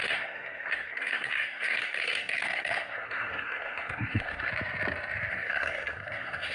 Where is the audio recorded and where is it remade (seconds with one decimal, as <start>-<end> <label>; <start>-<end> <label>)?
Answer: 0.0-4.5 remade; 4.5-5.3 recorded; 5.3-6.5 remade